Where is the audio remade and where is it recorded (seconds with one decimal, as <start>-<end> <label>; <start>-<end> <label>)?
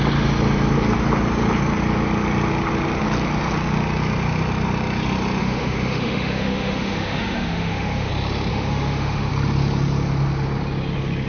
0.0-5.4 recorded; 5.4-8.1 remade; 8.1-8.5 recorded; 8.5-9.3 remade; 9.3-11.3 recorded